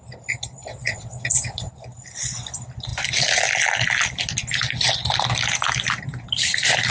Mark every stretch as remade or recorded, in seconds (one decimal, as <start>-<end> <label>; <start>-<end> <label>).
0.0-0.7 recorded; 0.7-1.7 remade; 1.7-6.9 recorded